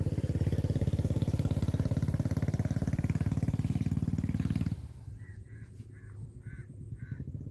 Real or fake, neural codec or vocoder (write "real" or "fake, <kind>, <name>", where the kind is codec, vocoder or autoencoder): fake, vocoder, BigVGAN v2